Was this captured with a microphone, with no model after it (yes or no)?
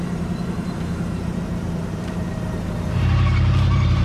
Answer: no